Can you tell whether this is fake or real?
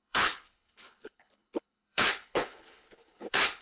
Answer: fake